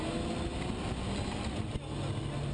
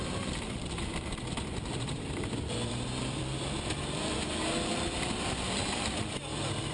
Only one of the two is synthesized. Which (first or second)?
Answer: second